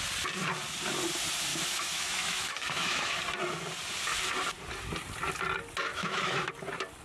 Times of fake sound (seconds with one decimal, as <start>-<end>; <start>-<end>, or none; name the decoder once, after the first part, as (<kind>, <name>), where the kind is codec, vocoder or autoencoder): 1.5-3.2 (autoencoder, DAC-VAE); 5.9-6.5